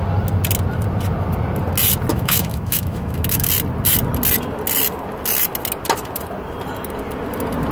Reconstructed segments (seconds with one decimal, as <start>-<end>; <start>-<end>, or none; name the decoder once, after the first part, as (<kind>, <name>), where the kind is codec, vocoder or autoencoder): 2.1-3.5 (autoencoder, DAC-VAE)